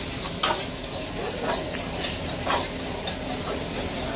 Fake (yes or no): no